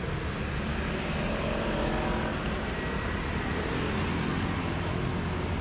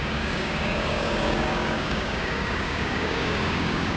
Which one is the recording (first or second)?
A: first